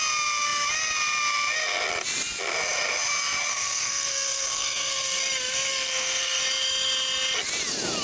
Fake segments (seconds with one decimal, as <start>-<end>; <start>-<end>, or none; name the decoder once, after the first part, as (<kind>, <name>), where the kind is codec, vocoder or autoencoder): 3.5-5.2 (codec, SNAC); 5.7-6.4